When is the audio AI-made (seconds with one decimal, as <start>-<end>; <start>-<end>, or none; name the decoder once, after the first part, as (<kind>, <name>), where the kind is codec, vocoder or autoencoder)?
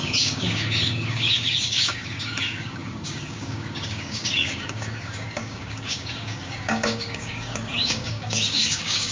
0.0-9.1 (codec, DAC)